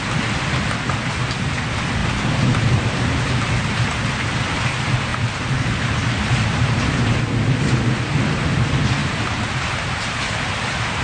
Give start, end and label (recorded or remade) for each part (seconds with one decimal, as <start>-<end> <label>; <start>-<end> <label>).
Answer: 0.0-2.0 recorded; 2.0-4.0 remade; 4.0-5.1 recorded; 5.1-7.2 remade; 7.2-9.0 recorded; 9.0-10.6 remade; 10.6-11.0 recorded